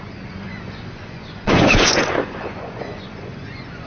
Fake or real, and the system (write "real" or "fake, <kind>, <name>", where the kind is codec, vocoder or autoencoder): fake, vocoder, Vocos